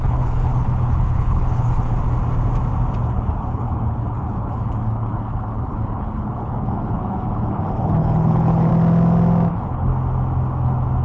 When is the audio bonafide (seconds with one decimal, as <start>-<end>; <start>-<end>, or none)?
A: 1.9-3.1; 8.7-9.5; 9.9-11.0